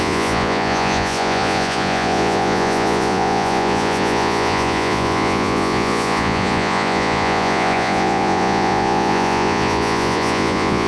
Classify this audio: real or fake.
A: fake